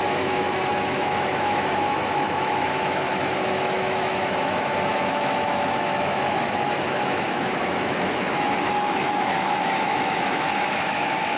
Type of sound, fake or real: fake